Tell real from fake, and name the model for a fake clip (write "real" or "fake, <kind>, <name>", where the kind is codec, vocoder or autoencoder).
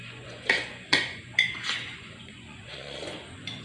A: fake, vocoder, Vocos